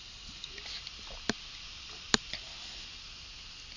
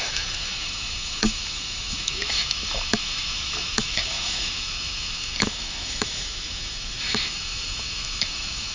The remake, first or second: second